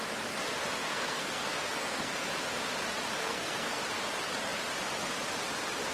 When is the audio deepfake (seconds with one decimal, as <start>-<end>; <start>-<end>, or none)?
0.8-2.3; 3.2-3.8